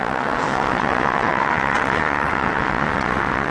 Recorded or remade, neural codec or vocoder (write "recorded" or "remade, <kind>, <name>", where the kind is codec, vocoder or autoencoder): remade, vocoder, WaveNeXt